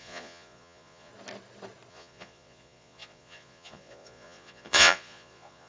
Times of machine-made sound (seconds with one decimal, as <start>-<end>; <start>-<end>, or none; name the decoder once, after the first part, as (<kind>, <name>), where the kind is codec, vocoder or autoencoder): 0.0-1.1 (vocoder, Vocos); 1.9-5.7